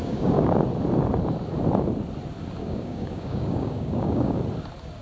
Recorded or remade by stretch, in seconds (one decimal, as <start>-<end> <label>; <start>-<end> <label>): 0.0-0.6 remade; 0.6-2.6 recorded; 2.6-4.4 remade; 4.4-5.0 recorded